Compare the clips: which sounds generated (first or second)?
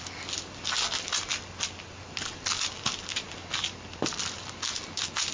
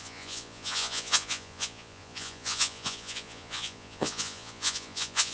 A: second